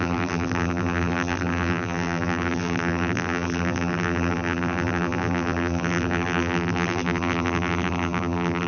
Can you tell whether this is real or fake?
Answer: fake